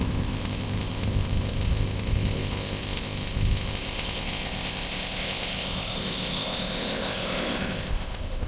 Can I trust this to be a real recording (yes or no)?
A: no